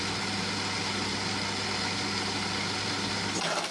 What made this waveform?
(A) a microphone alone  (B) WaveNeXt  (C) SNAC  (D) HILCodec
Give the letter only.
A